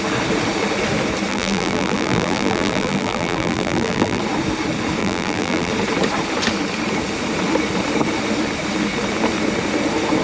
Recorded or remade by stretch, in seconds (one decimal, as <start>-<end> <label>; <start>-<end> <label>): 0.0-1.3 recorded; 1.3-4.2 remade; 4.2-5.0 recorded; 5.0-5.7 remade; 5.7-10.2 recorded